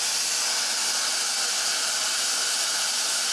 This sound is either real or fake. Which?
real